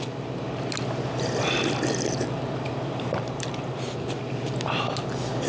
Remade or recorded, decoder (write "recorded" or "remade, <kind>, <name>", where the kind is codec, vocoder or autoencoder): recorded